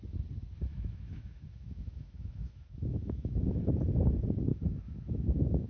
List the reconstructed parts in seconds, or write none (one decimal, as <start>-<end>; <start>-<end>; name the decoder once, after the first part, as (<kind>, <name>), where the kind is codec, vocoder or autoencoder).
0.7-3.6 (autoencoder, DAC-VAE); 4.5-5.7

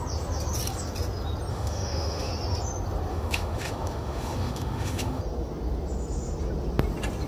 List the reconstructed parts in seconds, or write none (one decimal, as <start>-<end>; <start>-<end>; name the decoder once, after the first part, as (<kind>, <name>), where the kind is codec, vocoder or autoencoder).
1.5-2.3 (autoencoder, DAC-VAE); 3.1-5.2

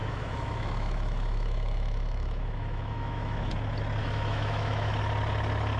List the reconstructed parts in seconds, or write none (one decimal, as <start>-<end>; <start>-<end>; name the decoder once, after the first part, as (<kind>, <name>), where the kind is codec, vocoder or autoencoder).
0.0-3.5 (autoencoder, DAC-VAE); 4.0-5.0

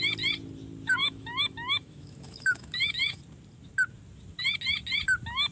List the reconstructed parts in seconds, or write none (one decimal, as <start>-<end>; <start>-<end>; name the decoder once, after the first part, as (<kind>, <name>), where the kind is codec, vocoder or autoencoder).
1.0-3.2 (autoencoder, DAC-VAE)

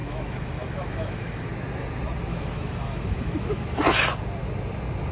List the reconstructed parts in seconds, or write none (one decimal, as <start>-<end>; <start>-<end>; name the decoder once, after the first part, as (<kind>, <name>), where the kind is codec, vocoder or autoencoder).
0.0-1.5 (autoencoder, DAC-VAE); 2.3-3.8

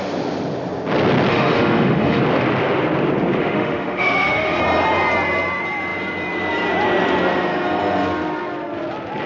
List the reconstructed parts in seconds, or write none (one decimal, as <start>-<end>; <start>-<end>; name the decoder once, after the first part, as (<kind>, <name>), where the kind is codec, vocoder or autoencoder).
1.3-2.2 (autoencoder, DAC-VAE); 3.4-4.6

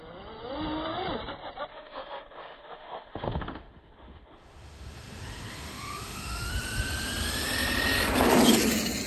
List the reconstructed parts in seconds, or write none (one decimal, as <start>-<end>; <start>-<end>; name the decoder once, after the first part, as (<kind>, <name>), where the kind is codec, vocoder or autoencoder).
1.7-6.5 (autoencoder, DAC-VAE)

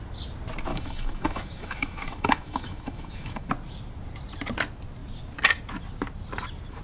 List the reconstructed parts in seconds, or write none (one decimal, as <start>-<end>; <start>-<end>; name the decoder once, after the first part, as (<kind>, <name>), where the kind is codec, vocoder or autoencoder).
0.7-3.5 (autoencoder, DAC-VAE)